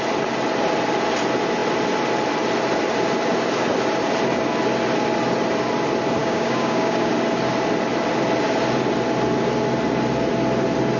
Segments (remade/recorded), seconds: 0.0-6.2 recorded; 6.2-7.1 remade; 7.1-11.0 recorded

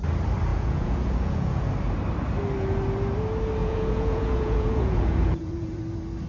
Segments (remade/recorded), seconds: 0.0-0.5 recorded; 0.5-1.7 remade; 1.7-3.6 recorded; 3.6-5.8 remade; 5.8-6.3 recorded

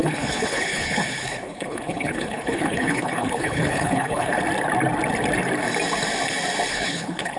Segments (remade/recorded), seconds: 0.0-4.4 remade; 4.4-6.7 recorded; 6.7-7.4 remade

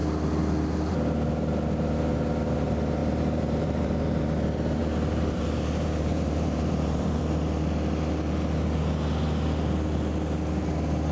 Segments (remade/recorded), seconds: 0.0-3.0 recorded; 3.0-4.2 remade; 4.2-4.8 recorded; 4.8-7.2 remade; 7.2-11.1 recorded

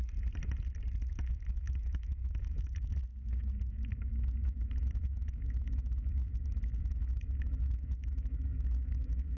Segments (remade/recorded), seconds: 0.0-1.1 recorded; 1.1-3.0 remade; 3.0-3.7 recorded; 3.7-9.4 remade

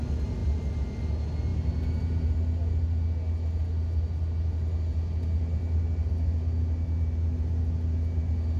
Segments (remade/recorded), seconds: 0.0-8.6 recorded

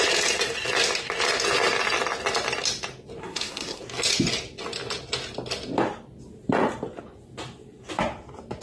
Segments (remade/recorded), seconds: 0.0-3.2 recorded; 3.2-3.8 remade; 3.8-8.6 recorded